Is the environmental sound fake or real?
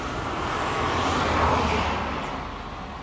real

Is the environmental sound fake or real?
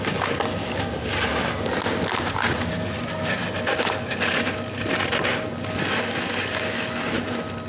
real